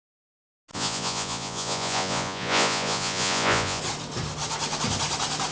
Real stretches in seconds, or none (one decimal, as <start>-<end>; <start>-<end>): 0.0-0.7; 3.8-5.5